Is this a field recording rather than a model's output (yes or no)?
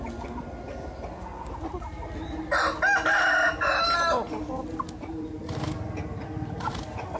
yes